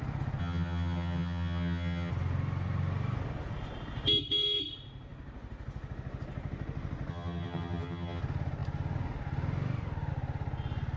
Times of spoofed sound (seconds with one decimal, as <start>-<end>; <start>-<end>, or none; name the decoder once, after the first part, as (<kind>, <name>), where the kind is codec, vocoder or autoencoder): 0.4-2.1 (vocoder, HiFi-GAN); 7.1-8.2